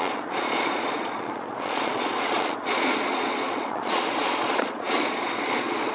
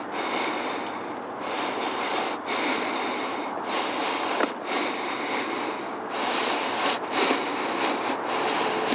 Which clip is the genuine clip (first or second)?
second